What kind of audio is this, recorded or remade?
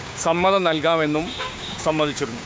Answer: remade